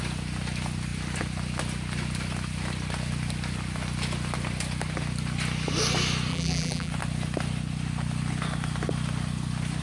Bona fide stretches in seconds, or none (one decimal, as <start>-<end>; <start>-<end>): 0.0-6.3; 6.9-9.8